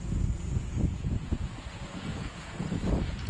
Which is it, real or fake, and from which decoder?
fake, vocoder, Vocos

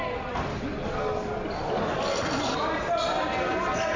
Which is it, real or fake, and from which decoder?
real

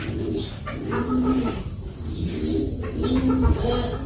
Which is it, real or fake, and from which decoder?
real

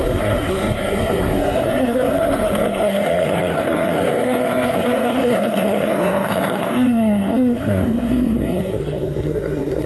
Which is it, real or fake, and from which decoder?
fake, codec, SNAC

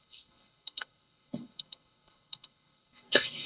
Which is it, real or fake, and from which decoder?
fake, codec, SNAC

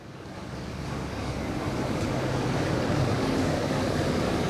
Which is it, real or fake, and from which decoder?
fake, codec, DAC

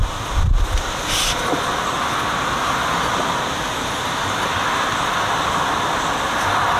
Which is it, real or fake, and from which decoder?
real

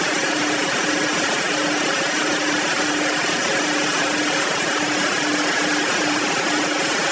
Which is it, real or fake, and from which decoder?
real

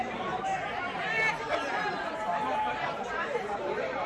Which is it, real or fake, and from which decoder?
fake, vocoder, BigVGAN v2